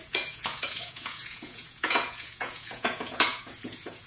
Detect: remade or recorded remade